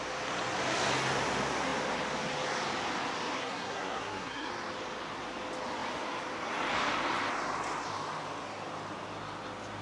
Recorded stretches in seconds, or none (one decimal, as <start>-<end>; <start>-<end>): 0.0-3.4; 4.5-9.8